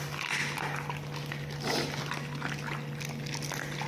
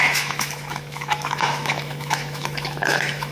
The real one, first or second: first